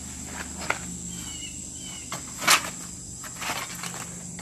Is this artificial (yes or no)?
no